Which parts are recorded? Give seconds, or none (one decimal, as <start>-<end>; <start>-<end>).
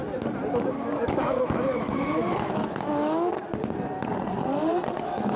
0.0-0.7; 3.3-4.9